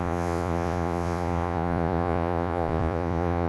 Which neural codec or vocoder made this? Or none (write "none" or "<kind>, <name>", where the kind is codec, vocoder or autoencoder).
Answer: vocoder, Vocos